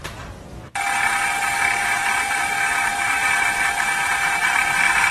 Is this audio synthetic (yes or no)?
no